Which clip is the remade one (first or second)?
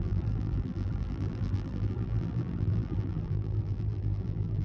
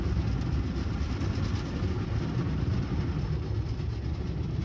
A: first